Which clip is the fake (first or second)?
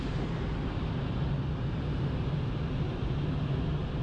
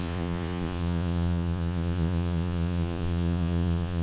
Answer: second